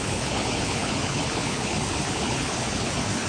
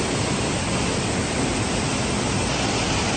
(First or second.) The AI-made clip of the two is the first